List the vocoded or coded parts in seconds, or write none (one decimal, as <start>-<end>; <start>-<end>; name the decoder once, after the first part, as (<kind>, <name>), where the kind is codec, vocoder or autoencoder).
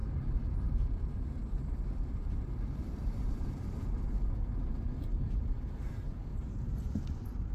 0.0-3.8 (vocoder, BigVGAN v2); 6.3-6.8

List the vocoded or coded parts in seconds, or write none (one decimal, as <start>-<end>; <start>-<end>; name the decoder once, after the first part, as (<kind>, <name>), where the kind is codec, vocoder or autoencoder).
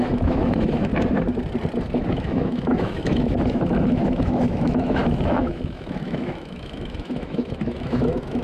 0.0-0.9 (autoencoder, DAC-VAE); 2.1-8.4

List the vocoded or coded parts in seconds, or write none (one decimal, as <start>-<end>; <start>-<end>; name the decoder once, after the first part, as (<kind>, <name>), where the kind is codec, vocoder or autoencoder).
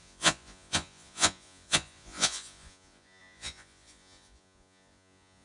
0.0-5.4 (vocoder, Vocos)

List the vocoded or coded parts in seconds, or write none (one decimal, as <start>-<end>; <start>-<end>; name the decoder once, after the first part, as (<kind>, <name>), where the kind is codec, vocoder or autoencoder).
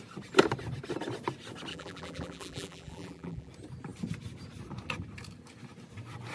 1.7-3.5 (vocoder, BigVGAN v2)